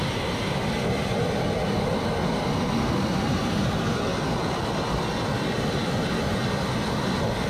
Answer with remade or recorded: recorded